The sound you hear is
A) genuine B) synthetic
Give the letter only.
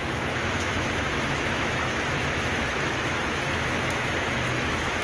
B